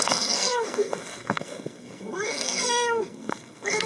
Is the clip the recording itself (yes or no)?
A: no